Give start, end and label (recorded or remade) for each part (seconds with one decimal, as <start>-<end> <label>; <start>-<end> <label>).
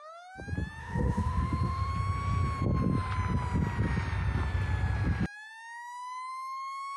0.0-0.8 recorded; 0.8-1.9 remade; 1.9-7.0 recorded